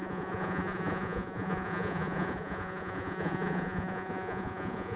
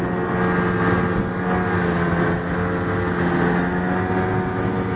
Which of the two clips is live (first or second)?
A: second